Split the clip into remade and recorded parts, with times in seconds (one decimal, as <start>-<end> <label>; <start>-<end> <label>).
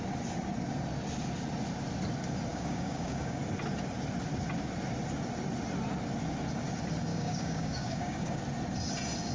0.0-2.5 recorded; 2.5-3.4 remade; 3.4-7.1 recorded; 7.1-8.4 remade; 8.4-9.3 recorded